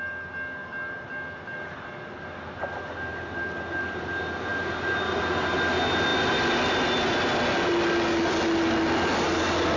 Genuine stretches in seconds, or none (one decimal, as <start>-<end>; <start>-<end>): 0.0-9.8